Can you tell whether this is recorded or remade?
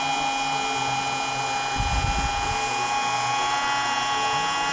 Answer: recorded